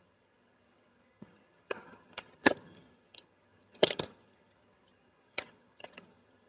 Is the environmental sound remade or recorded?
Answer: remade